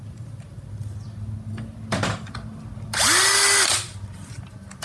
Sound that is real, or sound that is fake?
real